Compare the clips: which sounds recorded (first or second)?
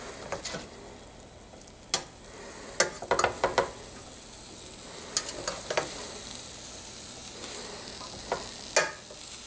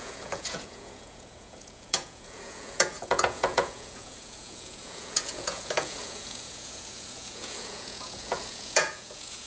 first